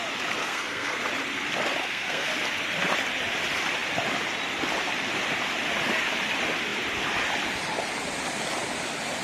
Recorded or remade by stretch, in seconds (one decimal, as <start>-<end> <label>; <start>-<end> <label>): 0.0-0.4 recorded; 0.4-1.0 remade; 1.0-1.8 recorded; 1.8-2.3 remade; 2.3-9.2 recorded